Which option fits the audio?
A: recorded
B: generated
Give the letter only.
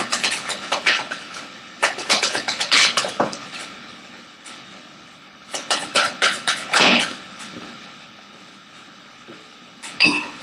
B